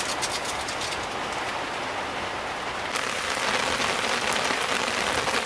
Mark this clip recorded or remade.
recorded